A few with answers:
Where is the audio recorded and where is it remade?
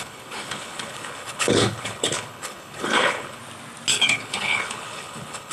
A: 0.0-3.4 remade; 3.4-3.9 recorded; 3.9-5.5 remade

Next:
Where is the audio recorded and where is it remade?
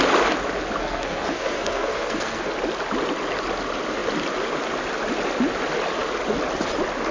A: 0.0-0.8 recorded; 0.8-2.5 remade; 2.5-7.1 recorded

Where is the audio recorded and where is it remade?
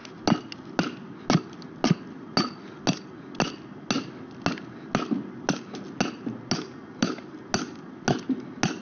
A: 0.0-8.8 recorded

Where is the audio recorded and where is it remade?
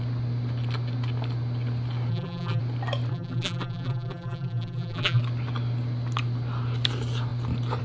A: 0.0-2.1 recorded; 2.1-2.6 remade; 2.6-3.1 recorded; 3.1-5.2 remade; 5.2-7.8 recorded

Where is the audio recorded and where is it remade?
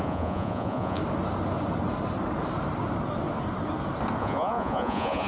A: 0.0-1.0 remade; 1.0-4.2 recorded; 4.2-5.3 remade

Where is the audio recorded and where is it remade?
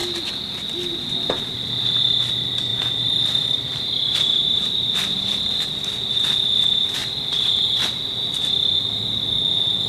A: 0.0-2.7 recorded; 2.7-5.5 remade; 5.5-9.9 recorded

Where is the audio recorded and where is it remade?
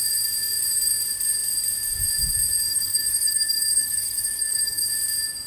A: 0.0-2.7 recorded; 2.7-4.9 remade; 4.9-5.5 recorded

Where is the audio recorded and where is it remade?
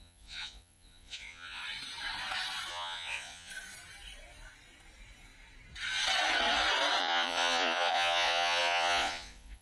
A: 0.0-1.6 remade; 1.6-2.7 recorded; 2.7-3.5 remade; 3.5-7.0 recorded; 7.0-9.6 remade